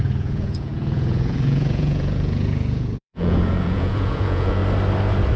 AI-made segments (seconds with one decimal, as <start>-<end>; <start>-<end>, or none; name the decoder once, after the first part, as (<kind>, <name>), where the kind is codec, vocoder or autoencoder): 0.0-4.6 (vocoder, Vocos)